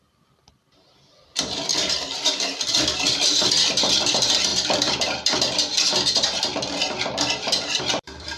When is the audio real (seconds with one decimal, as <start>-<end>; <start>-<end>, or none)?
none

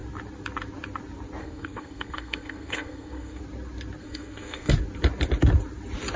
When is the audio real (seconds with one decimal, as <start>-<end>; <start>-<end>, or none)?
0.0-1.4; 3.4-4.0; 4.7-6.2

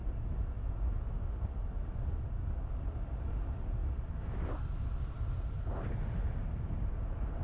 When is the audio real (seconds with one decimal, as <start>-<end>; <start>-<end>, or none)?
0.0-7.4

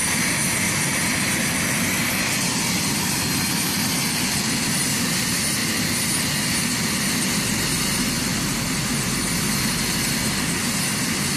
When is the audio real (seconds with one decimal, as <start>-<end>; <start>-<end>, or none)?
0.0-11.4

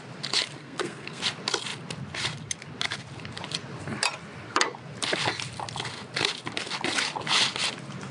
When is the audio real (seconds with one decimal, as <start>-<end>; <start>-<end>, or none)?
0.0-0.6; 1.2-8.1

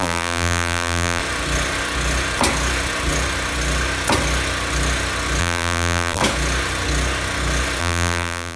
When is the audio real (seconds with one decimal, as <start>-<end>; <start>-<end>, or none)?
1.2-5.4; 6.2-7.8